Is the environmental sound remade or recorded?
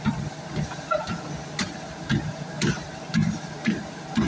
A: recorded